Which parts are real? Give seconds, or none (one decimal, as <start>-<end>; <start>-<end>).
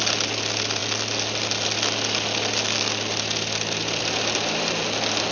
0.0-5.3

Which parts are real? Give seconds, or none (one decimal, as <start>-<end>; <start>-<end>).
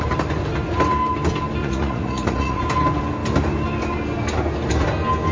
0.0-1.6; 2.6-5.3